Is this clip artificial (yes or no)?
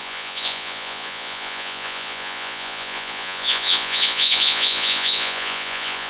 yes